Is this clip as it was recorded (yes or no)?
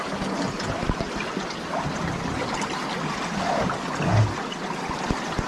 yes